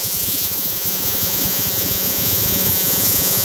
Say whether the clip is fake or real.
fake